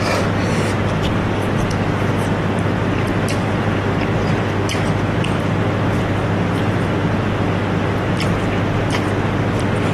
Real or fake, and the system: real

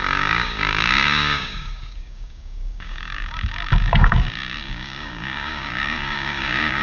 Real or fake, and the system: fake, codec, DAC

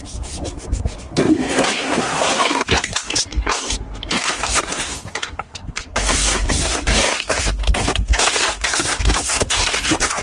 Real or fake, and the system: fake, codec, SNAC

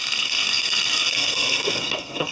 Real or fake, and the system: fake, codec, SNAC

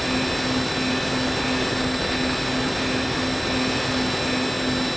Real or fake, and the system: real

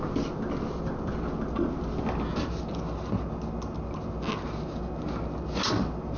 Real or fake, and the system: real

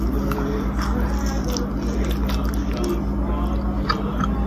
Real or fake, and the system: real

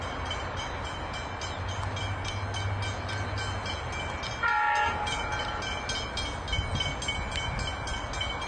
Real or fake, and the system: real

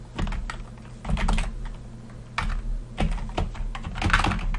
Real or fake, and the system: real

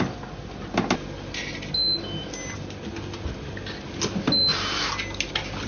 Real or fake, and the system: real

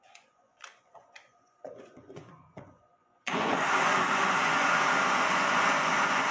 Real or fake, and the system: fake, vocoder, Vocos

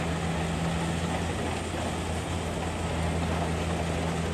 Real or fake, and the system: real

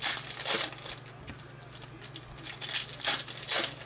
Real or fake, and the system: real